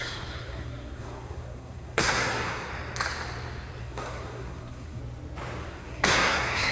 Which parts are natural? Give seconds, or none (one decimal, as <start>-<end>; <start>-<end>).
2.7-3.8; 5.0-5.6

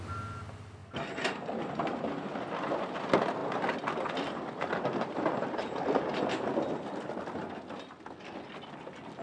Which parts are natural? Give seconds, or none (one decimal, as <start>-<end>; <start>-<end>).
0.0-9.2

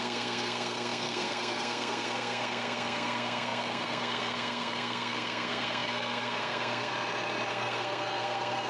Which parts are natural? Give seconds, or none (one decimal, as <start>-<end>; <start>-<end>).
6.9-7.5

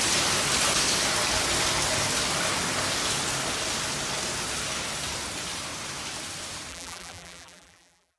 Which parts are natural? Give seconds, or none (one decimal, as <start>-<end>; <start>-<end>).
0.0-6.7

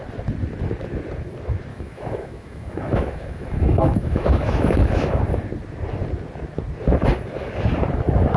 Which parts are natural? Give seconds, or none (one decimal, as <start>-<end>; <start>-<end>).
0.0-1.7; 5.2-8.4